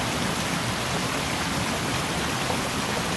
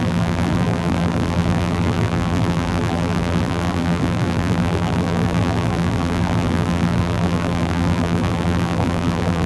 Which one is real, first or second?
first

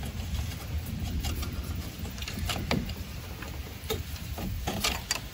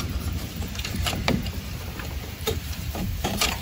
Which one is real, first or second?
first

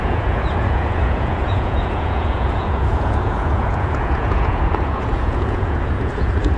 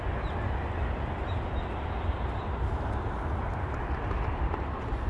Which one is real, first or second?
second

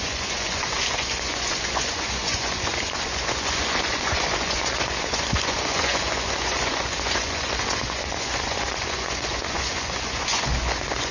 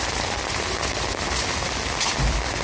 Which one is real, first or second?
second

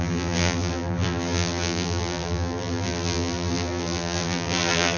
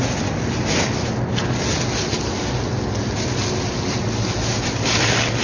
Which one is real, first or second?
second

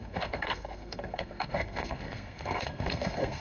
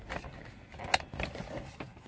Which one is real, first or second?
second